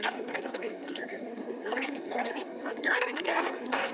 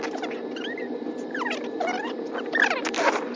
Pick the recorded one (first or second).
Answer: second